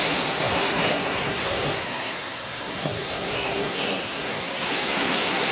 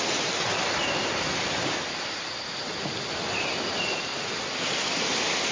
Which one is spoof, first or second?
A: first